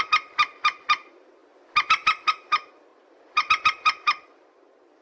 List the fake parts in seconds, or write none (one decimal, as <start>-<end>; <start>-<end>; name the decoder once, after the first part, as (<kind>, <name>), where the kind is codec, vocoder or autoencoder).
0.0-1.4 (vocoder, BigVGAN v2); 2.3-5.0